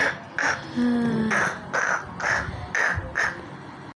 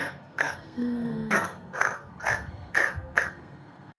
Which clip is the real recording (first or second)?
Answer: first